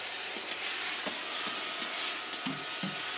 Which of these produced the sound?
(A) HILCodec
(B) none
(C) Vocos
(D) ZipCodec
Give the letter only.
B